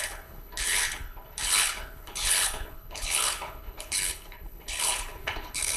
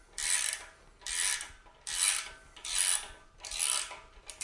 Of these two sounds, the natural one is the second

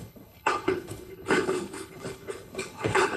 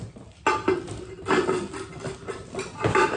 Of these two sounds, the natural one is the second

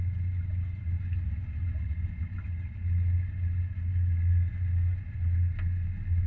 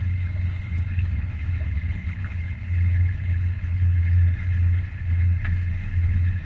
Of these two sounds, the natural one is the first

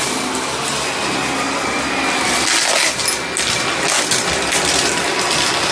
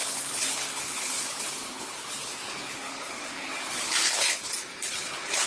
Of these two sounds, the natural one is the first